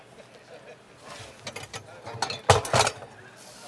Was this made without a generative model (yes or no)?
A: yes